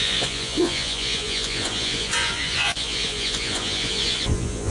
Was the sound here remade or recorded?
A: remade